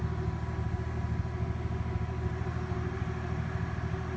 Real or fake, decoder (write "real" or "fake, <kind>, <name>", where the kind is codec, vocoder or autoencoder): real